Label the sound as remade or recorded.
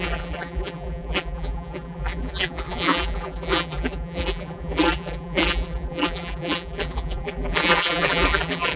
remade